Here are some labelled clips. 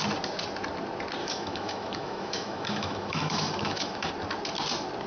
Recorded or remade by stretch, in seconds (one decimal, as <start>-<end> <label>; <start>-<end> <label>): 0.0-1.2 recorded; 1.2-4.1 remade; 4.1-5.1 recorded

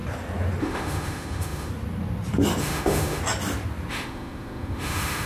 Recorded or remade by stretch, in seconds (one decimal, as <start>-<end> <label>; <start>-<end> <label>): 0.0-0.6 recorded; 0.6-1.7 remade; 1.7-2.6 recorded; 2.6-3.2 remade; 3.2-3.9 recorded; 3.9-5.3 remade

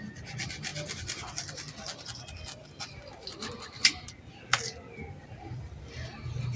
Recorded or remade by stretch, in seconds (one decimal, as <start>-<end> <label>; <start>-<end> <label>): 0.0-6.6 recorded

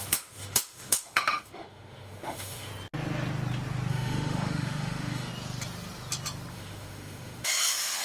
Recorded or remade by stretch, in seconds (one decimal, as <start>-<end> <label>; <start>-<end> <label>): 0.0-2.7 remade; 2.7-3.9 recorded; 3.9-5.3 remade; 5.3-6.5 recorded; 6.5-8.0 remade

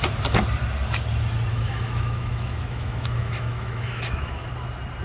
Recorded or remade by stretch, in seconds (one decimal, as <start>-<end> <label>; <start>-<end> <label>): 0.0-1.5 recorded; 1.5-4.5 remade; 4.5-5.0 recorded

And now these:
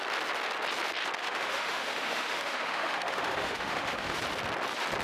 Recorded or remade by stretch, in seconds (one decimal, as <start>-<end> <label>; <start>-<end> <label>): 0.0-1.2 recorded; 1.2-4.2 remade; 4.2-5.0 recorded

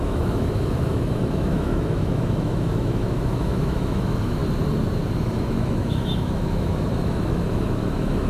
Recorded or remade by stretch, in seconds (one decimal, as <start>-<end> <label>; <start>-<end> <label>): 0.0-4.4 remade; 4.4-5.1 recorded; 5.1-8.3 remade